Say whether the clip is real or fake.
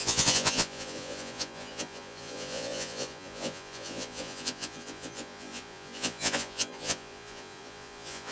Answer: fake